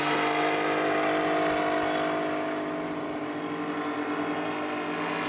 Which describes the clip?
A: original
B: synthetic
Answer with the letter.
A